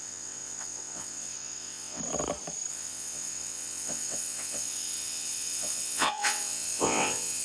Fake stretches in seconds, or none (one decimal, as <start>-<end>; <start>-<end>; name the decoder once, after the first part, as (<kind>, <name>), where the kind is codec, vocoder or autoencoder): 0.0-2.0 (vocoder, WaveNeXt); 2.7-7.4